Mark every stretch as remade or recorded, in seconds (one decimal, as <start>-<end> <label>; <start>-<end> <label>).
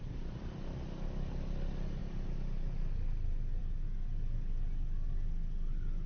0.0-6.1 recorded